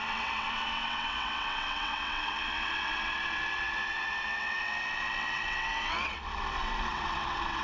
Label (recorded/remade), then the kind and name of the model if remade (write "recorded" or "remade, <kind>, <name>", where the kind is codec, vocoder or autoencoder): remade, vocoder, WaveNeXt